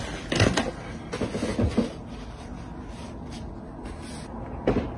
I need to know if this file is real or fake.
real